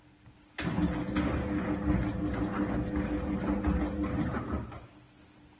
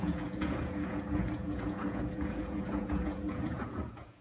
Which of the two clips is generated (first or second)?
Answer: second